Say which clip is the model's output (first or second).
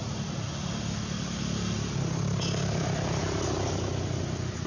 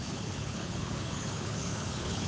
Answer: second